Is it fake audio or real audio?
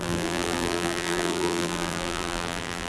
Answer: fake